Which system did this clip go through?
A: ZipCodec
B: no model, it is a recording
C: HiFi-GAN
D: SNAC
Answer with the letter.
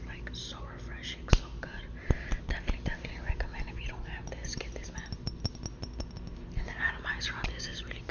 B